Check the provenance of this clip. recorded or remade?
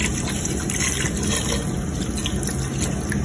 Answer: recorded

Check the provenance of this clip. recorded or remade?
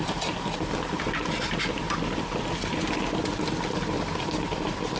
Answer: recorded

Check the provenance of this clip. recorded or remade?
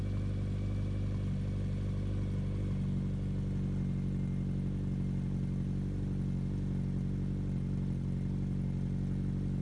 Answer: recorded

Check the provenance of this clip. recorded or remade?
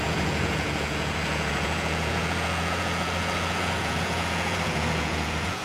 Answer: remade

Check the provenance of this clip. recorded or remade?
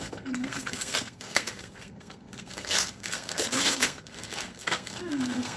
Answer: remade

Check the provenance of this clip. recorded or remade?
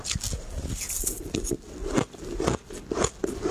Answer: recorded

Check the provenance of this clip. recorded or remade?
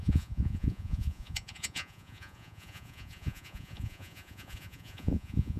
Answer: remade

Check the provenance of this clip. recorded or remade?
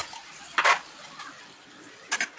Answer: recorded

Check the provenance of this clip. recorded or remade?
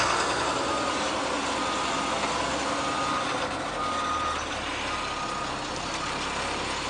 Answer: recorded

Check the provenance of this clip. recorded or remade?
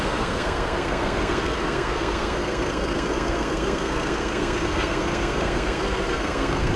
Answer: remade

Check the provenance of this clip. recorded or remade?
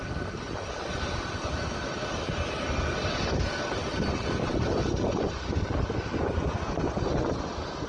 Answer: recorded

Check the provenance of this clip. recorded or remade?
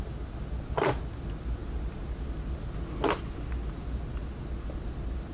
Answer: recorded